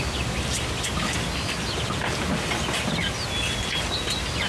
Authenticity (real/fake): real